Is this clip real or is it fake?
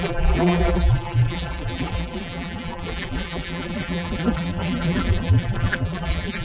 fake